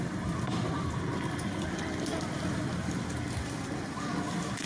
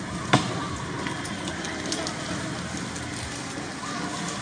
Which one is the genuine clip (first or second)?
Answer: second